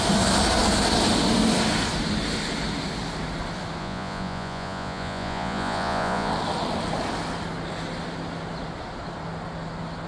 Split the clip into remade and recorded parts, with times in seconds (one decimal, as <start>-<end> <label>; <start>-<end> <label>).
0.0-3.8 recorded; 3.8-6.3 remade; 6.3-10.1 recorded